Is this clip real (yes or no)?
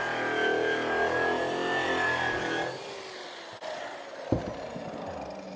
yes